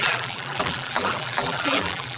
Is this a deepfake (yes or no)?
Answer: yes